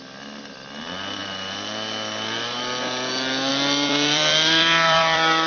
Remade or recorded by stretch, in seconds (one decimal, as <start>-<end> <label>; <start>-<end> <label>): 0.0-5.5 remade